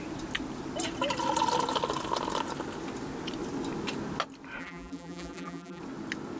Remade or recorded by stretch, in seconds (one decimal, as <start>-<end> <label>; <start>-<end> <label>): 0.0-4.6 recorded; 4.6-5.8 remade; 5.8-6.4 recorded